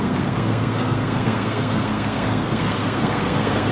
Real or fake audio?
fake